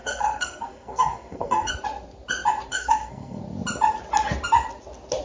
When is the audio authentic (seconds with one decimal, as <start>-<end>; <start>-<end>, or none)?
1.7-2.7; 3.4-5.2